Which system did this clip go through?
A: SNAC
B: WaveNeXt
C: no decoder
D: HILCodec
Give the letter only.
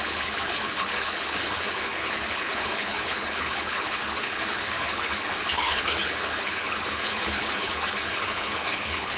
D